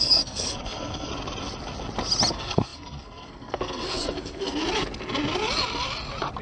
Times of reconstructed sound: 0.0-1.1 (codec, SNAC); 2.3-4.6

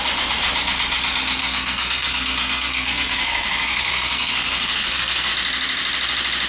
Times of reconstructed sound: 1.4-5.3 (codec, SNAC)